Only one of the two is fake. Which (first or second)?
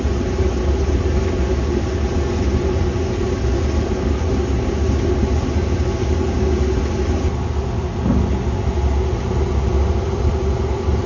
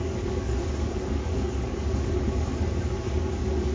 second